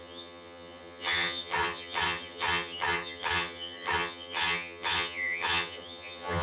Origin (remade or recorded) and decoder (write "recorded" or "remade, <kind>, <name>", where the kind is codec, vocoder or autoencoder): remade, vocoder, HiFi-GAN